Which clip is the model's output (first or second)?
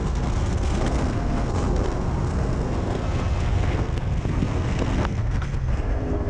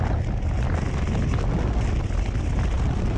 first